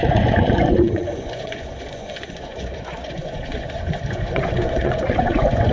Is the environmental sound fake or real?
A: fake